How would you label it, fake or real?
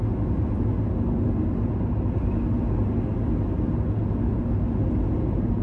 real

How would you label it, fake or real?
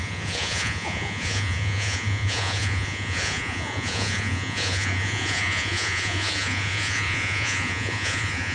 fake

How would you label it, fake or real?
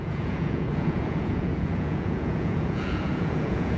fake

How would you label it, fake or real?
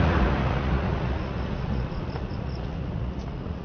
fake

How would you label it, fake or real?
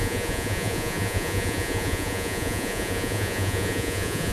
fake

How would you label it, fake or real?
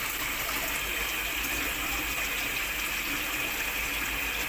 real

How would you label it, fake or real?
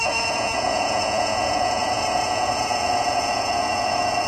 fake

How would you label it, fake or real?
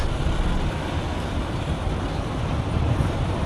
real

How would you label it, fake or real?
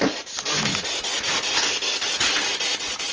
real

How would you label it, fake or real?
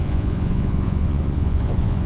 fake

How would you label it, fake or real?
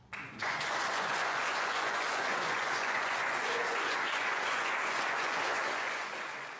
fake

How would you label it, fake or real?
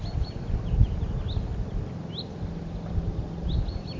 real